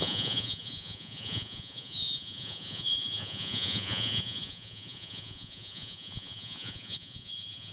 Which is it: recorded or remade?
remade